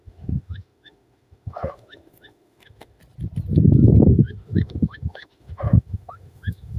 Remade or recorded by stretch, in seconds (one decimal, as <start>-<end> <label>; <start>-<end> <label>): 0.0-3.0 remade; 3.0-4.1 recorded; 4.1-6.8 remade